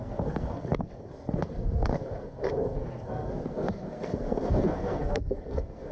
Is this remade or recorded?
remade